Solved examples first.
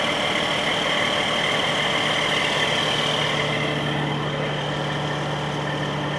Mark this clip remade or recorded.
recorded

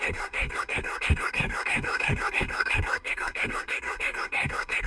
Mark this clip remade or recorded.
remade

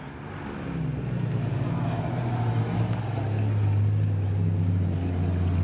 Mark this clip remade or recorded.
recorded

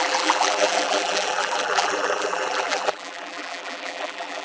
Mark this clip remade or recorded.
remade